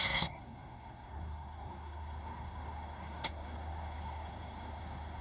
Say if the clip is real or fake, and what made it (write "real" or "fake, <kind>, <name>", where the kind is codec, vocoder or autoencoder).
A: fake, codec, SNAC